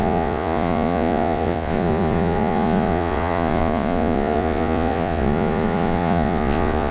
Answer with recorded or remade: remade